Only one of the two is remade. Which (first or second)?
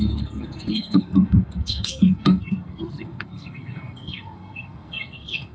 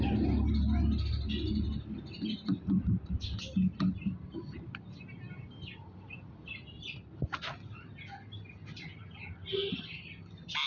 first